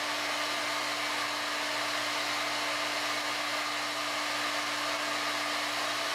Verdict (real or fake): real